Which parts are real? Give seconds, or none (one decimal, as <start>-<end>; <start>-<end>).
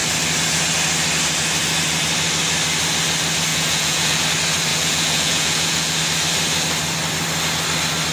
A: 0.0-3.5; 4.2-4.7; 6.0-8.1